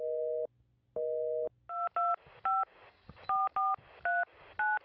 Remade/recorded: recorded